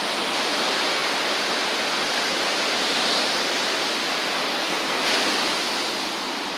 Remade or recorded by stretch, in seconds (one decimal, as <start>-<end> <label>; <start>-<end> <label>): 0.0-4.5 recorded; 4.5-5.0 remade; 5.0-6.6 recorded